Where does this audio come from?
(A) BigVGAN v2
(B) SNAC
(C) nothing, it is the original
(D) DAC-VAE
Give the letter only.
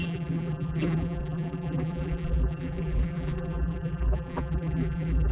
A